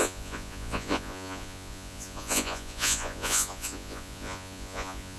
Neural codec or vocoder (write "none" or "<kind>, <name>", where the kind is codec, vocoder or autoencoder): vocoder, Vocos